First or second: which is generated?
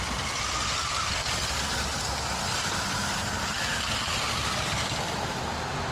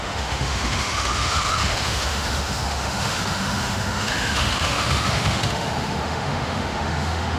second